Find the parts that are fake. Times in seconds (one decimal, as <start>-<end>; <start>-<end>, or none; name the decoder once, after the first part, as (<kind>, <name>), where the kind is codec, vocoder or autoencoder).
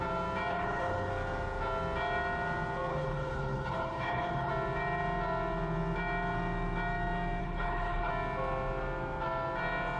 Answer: 0.5-1.1 (codec, HILCodec); 2.9-4.5; 7.4-8.1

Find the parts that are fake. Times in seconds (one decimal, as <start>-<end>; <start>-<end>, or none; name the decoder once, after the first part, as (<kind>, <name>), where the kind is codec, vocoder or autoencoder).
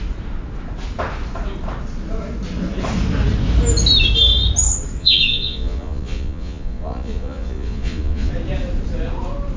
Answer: 5.0-8.3 (vocoder, Vocos)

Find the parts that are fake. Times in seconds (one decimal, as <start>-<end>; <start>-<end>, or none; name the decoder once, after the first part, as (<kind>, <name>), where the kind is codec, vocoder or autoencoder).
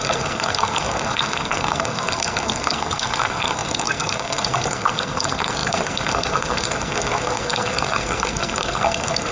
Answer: 0.0-9.3 (codec, SNAC)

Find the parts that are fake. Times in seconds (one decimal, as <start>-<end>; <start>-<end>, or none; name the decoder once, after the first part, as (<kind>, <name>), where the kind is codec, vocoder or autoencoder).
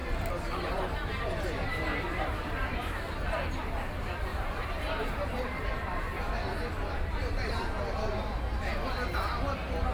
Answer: 0.0-3.0 (vocoder, BigVGAN v2); 4.3-8.4